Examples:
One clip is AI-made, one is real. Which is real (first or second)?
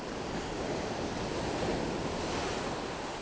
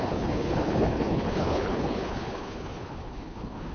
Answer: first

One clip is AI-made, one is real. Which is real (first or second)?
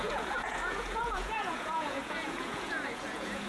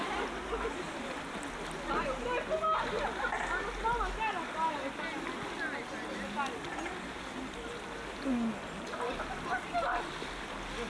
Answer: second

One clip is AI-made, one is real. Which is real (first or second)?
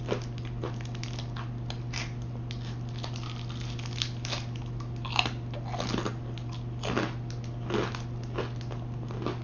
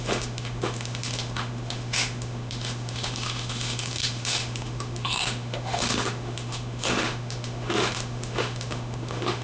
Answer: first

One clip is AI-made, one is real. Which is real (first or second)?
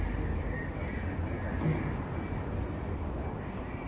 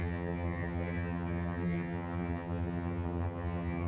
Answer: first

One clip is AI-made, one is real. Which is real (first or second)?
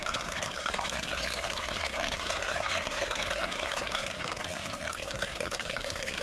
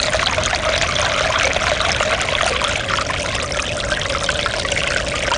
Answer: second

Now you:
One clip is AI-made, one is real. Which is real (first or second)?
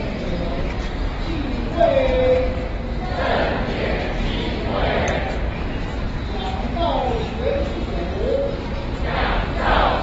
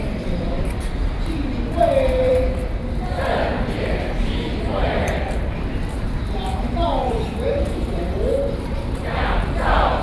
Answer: first